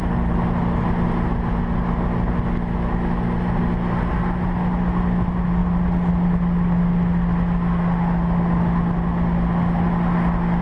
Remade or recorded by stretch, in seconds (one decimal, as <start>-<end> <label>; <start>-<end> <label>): 0.0-10.6 recorded